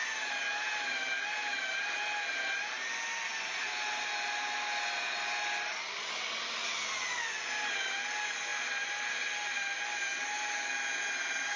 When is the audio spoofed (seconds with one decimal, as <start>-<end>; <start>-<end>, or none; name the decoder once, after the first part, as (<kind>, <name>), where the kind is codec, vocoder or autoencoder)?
none